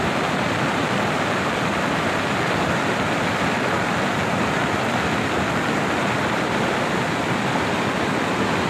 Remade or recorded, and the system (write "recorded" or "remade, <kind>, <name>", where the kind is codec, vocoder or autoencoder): recorded